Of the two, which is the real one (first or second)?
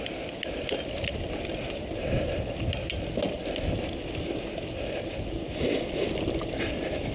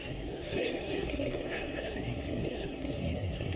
first